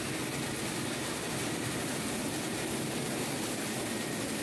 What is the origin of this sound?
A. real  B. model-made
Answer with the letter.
A